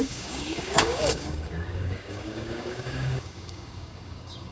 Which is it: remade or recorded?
remade